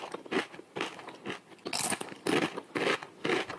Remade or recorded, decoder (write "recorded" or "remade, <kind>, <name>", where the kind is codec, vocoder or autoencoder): recorded